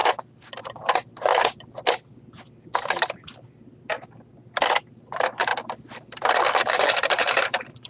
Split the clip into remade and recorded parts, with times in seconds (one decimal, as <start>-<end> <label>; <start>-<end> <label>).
0.0-0.6 recorded; 0.6-1.3 remade; 1.3-4.9 recorded; 4.9-5.5 remade; 5.5-6.7 recorded; 6.7-7.9 remade